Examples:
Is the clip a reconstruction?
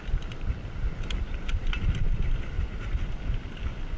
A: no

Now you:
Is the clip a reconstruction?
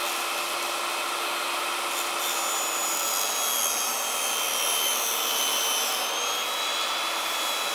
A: no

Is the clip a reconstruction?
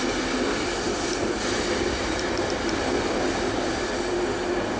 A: no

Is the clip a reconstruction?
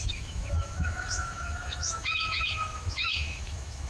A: yes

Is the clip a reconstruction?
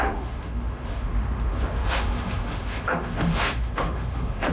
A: yes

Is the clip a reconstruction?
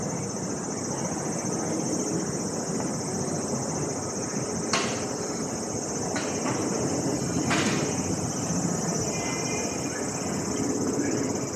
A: no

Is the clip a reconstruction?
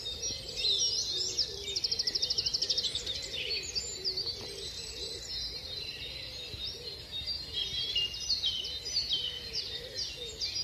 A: no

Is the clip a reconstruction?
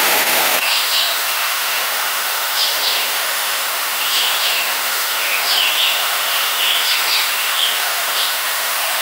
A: yes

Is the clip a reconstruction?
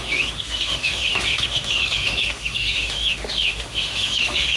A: yes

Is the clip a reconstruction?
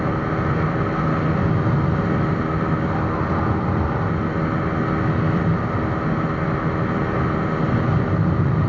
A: no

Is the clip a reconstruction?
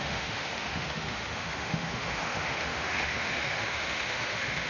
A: yes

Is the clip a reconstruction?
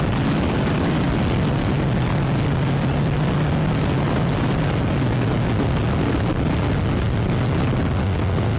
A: no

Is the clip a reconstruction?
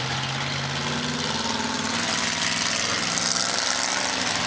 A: no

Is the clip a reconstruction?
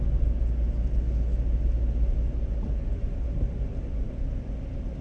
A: no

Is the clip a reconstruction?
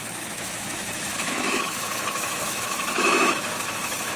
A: yes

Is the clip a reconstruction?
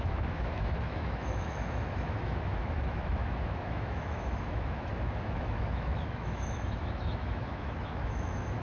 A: yes